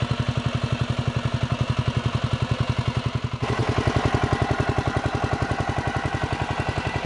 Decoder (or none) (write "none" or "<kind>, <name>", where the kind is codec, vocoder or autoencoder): none